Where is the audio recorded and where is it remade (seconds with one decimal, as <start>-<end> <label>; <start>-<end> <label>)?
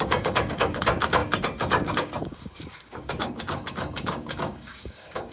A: 0.0-5.3 remade